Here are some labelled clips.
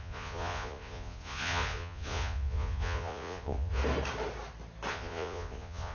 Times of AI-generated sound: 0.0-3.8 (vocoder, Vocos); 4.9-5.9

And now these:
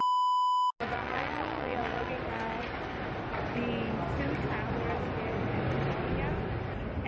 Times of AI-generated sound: 0.8-2.1 (vocoder, Vocos)